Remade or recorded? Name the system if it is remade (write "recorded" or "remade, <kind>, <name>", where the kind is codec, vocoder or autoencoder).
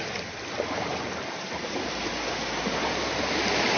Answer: recorded